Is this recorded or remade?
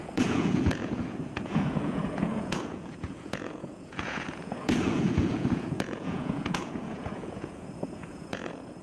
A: remade